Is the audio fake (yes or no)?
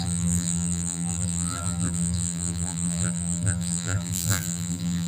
yes